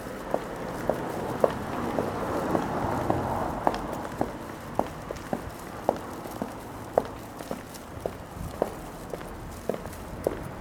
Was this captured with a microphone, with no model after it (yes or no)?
yes